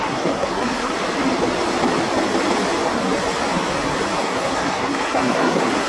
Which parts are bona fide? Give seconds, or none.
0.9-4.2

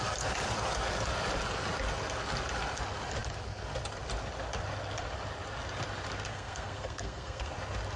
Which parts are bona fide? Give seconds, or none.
0.0-6.3; 7.5-8.0

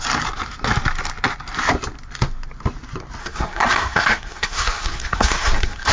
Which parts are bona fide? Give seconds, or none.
0.0-3.2

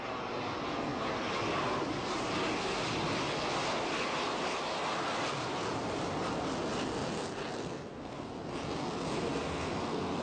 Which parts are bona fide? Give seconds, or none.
0.0-7.6; 8.3-9.1

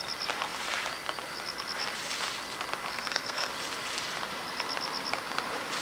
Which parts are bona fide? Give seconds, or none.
0.0-2.9; 3.5-5.8